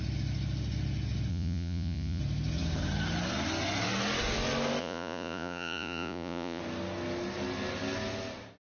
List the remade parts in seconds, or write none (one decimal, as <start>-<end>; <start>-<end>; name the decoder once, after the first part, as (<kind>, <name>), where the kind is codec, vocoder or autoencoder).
1.3-2.2 (vocoder, Vocos); 4.8-6.6